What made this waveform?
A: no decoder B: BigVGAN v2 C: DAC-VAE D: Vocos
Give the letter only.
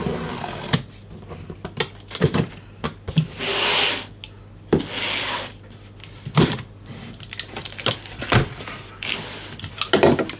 A